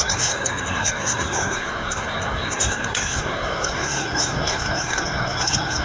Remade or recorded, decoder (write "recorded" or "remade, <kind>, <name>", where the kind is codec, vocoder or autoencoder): remade, codec, SNAC